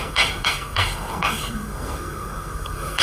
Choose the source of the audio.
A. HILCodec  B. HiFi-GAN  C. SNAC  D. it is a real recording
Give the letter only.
C